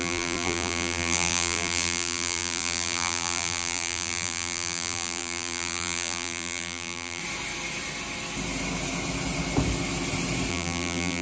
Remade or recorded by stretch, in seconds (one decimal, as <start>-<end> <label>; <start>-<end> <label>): 0.0-7.2 remade; 7.2-10.5 recorded; 10.5-11.2 remade

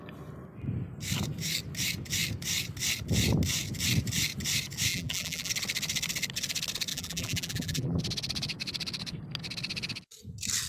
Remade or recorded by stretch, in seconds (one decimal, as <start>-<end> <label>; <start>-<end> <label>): 0.0-4.9 recorded; 4.9-5.5 remade; 5.5-6.9 recorded; 6.9-8.0 remade; 8.0-10.7 recorded